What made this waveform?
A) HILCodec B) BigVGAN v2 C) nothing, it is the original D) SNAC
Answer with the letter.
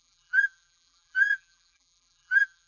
B